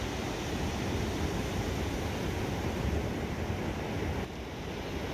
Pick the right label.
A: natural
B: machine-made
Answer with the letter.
A